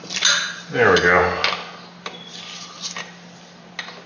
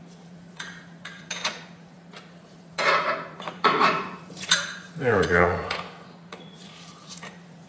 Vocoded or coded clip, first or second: second